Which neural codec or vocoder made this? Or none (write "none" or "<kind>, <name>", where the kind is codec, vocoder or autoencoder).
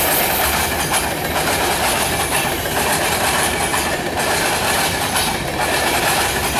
vocoder, BigVGAN v2